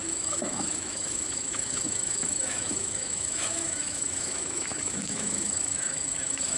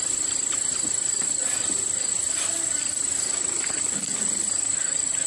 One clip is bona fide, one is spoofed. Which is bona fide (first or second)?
second